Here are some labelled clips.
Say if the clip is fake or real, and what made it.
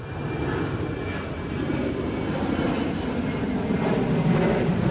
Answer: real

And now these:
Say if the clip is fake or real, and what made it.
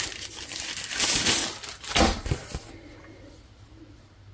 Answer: real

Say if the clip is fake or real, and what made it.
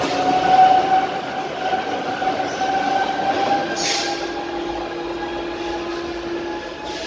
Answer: real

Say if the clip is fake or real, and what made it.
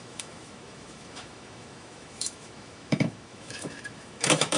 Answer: fake, autoencoder, DAC-VAE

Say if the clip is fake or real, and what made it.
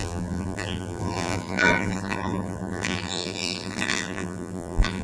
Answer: fake, vocoder, BigVGAN v2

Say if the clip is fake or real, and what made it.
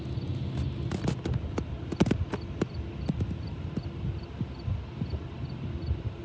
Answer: real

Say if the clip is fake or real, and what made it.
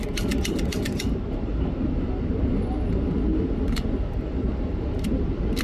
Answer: real